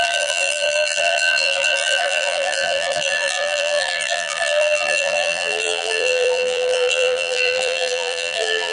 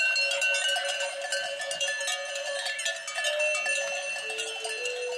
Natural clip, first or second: second